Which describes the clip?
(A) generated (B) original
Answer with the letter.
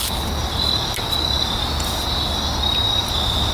B